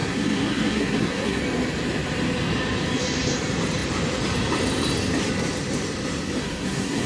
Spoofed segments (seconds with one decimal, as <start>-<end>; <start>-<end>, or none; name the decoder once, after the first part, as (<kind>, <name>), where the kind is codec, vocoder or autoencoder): 0.0-1.4 (codec, SNAC); 6.4-7.1